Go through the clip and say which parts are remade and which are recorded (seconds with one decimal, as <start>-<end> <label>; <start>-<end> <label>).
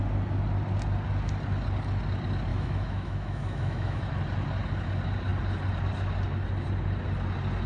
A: 0.0-2.5 recorded; 2.5-4.0 remade; 4.0-7.7 recorded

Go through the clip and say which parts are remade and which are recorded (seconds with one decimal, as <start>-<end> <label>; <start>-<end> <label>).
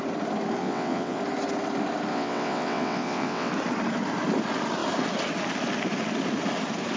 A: 0.0-0.6 recorded; 0.6-1.2 remade; 1.2-2.1 recorded; 2.1-3.5 remade; 3.5-7.0 recorded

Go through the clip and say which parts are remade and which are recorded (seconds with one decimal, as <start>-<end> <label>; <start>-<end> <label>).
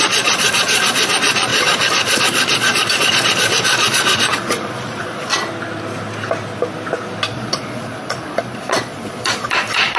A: 0.0-5.3 remade; 5.3-7.3 recorded; 7.3-10.0 remade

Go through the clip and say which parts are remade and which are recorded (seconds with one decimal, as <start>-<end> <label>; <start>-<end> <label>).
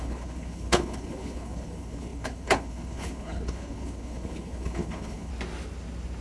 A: 0.0-5.3 remade; 5.3-6.2 recorded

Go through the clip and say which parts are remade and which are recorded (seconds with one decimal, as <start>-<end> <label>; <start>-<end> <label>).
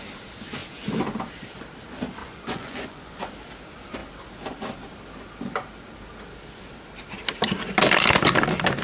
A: 0.0-2.2 recorded; 2.2-3.3 remade; 3.3-8.8 recorded